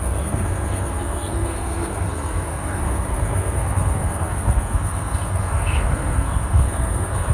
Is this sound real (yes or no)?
no